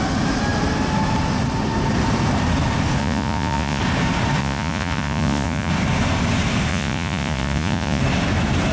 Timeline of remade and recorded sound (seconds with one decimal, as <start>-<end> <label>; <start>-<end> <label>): 0.0-3.0 recorded; 3.0-3.8 remade; 3.8-4.4 recorded; 4.4-5.7 remade; 5.7-6.7 recorded; 6.7-8.0 remade; 8.0-8.7 recorded